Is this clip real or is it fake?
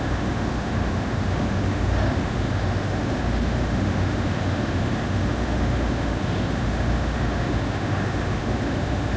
fake